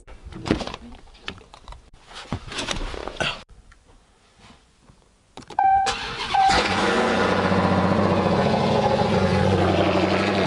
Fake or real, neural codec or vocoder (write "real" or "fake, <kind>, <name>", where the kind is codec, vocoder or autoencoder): fake, vocoder, Vocos